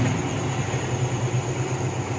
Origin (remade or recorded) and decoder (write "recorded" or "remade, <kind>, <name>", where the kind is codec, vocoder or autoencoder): recorded